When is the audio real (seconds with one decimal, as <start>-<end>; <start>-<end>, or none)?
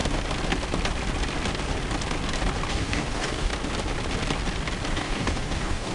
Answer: 0.0-2.7; 3.5-4.9